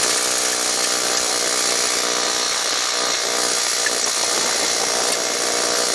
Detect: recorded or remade recorded